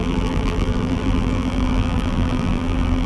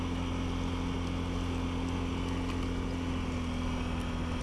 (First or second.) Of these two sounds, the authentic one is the second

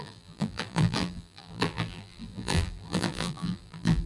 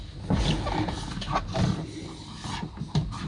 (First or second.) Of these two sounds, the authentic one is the second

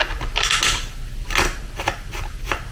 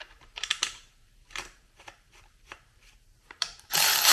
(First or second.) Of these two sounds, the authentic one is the first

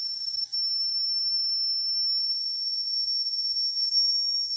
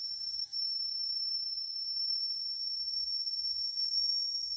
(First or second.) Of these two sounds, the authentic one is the first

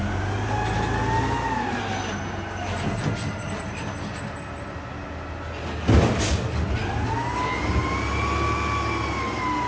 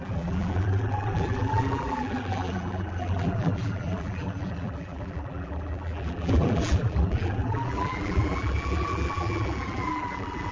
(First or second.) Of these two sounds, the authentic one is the first